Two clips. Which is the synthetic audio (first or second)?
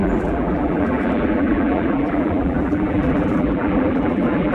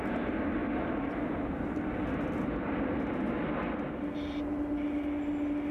first